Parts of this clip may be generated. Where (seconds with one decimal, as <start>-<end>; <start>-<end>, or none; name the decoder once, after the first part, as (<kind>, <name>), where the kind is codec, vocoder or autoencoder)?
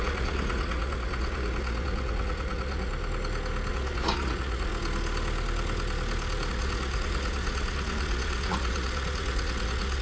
0.0-2.9 (vocoder, Vocos); 3.7-4.7; 6.5-10.0